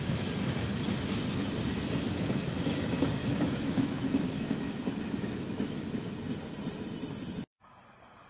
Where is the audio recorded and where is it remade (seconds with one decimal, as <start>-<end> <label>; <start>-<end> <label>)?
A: 0.0-3.2 recorded; 3.2-5.9 remade; 5.9-8.3 recorded

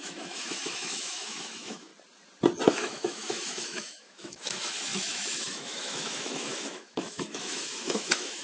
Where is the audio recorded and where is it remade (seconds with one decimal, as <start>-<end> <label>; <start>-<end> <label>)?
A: 0.0-1.9 remade; 1.9-2.7 recorded; 2.7-8.4 remade

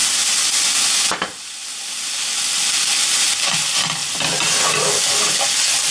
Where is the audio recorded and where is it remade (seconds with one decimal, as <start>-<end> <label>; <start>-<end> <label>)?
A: 0.0-5.9 recorded

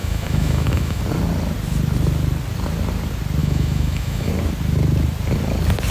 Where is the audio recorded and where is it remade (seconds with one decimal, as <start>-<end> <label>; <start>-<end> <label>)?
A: 0.0-1.0 remade; 1.0-3.4 recorded; 3.4-4.3 remade; 4.3-5.9 recorded

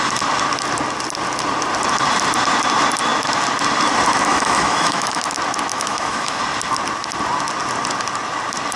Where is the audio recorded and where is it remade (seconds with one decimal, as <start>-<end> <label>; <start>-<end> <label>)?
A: 0.0-4.3 recorded; 4.3-5.2 remade; 5.2-5.7 recorded; 5.7-6.4 remade; 6.4-8.8 recorded

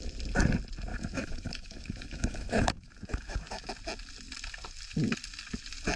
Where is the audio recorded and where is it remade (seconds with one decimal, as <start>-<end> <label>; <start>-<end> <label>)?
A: 0.0-0.9 recorded; 0.9-3.7 remade; 3.7-6.0 recorded